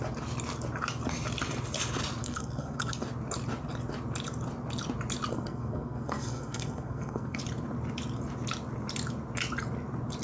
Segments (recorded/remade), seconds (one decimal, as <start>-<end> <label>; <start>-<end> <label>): 0.0-2.2 recorded; 2.2-3.0 remade; 3.0-5.3 recorded; 5.3-7.4 remade; 7.4-10.2 recorded